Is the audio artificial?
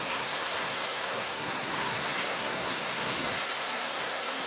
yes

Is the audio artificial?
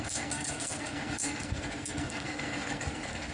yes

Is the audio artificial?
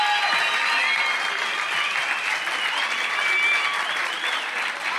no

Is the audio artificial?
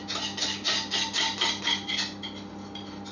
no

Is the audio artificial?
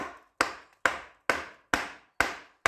no